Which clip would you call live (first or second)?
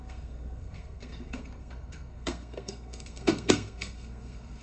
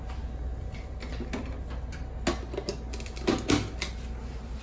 second